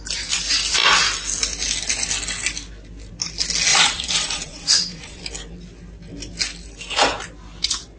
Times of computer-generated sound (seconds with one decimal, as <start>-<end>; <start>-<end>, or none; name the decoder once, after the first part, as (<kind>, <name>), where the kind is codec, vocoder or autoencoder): 3.7-5.2 (vocoder, Vocos)